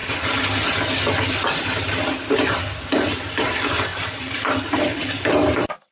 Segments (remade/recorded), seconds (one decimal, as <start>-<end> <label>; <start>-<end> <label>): 0.0-5.9 recorded